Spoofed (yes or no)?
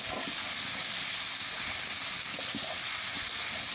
no